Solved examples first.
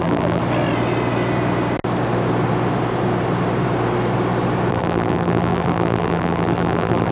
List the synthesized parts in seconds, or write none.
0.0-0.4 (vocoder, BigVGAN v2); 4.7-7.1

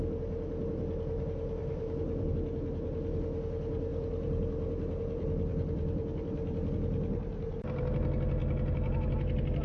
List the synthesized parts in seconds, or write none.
1.6-2.3 (vocoder, BigVGAN v2); 3.9-6.7; 8.4-9.6